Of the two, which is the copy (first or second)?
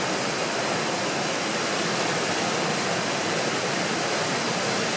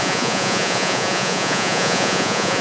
second